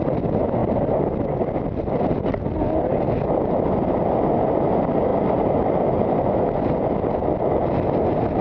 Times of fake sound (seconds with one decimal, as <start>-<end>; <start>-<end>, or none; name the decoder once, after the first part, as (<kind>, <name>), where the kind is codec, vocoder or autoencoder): 5.1-6.4 (vocoder, BigVGAN v2)